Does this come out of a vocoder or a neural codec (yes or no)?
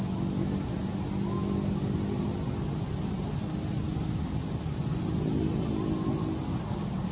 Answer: no